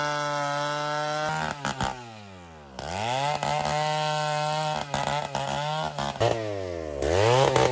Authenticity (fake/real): real